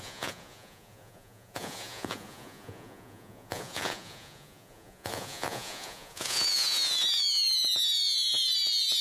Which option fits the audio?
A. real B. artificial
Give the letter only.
B